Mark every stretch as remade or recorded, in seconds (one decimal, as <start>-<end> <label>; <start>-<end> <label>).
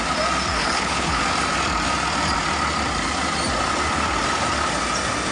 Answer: 0.0-0.5 recorded; 0.5-1.2 remade; 1.2-5.3 recorded